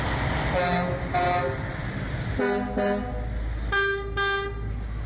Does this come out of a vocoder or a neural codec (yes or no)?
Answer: no